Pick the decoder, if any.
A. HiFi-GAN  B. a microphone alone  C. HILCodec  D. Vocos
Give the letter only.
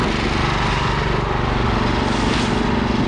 B